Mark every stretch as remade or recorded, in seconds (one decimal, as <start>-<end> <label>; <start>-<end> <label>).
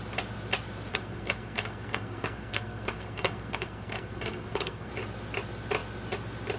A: 0.0-0.9 recorded; 0.9-4.9 remade; 4.9-6.6 recorded